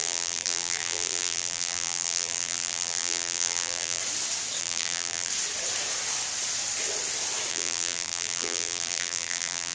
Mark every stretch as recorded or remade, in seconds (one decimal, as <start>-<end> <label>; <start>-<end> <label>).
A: 0.0-4.0 remade; 4.0-4.6 recorded; 4.6-5.3 remade; 5.3-7.5 recorded; 7.5-9.7 remade

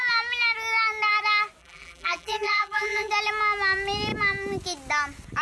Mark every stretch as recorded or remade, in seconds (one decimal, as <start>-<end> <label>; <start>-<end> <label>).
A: 0.0-1.6 recorded; 1.6-3.1 remade; 3.1-5.4 recorded

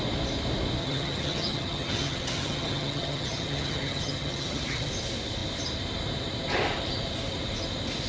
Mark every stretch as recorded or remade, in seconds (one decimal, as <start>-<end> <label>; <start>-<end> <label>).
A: 0.0-0.8 recorded; 0.8-4.9 remade; 4.9-8.1 recorded

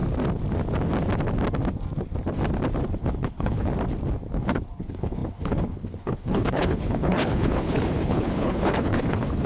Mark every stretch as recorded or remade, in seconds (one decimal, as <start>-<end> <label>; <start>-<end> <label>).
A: 0.0-3.0 recorded; 3.0-3.7 remade; 3.7-4.4 recorded; 4.4-9.5 remade

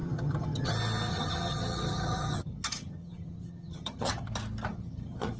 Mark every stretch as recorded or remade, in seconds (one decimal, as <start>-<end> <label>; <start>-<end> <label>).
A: 0.0-0.7 remade; 0.7-1.1 recorded; 1.1-4.3 remade; 4.3-4.7 recorded; 4.7-5.4 remade